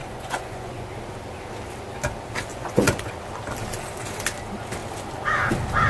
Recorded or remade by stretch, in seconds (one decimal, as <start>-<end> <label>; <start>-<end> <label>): 0.0-0.9 remade; 0.9-2.5 recorded; 2.5-3.1 remade; 3.1-5.9 recorded

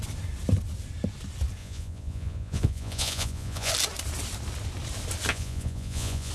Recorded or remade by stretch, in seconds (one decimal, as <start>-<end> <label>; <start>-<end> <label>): 0.0-1.6 recorded; 1.6-3.7 remade; 3.7-5.3 recorded; 5.3-6.3 remade

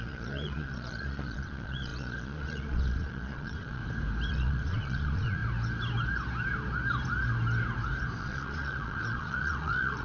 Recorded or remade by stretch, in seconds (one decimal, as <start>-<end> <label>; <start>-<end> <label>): 0.0-3.8 remade; 3.8-4.3 recorded; 4.3-5.4 remade; 5.4-8.2 recorded; 8.2-10.0 remade